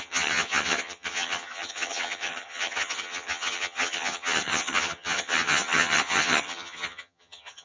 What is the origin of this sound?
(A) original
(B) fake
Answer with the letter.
B